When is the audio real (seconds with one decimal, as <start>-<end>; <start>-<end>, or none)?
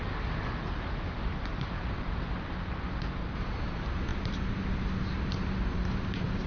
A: 0.0-1.1; 2.2-4.1; 5.0-6.5